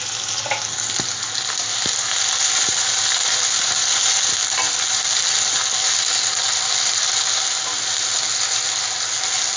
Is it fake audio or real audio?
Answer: real